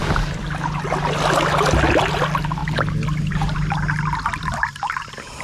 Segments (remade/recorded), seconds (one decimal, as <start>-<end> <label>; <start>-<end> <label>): 0.0-5.4 recorded